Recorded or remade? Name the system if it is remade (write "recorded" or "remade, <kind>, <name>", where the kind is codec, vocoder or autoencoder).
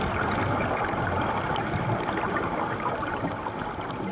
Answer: recorded